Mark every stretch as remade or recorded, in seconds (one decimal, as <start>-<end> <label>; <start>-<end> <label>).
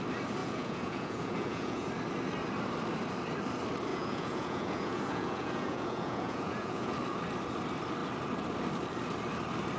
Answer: 0.0-0.4 recorded; 0.4-1.9 remade; 1.9-3.9 recorded; 3.9-6.9 remade; 6.9-9.8 recorded